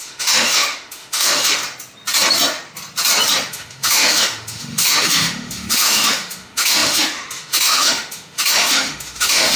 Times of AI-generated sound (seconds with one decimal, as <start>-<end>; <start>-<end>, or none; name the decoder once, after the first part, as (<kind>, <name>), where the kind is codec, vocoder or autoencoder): 0.0-1.6 (autoencoder, DAC-VAE); 3.5-9.6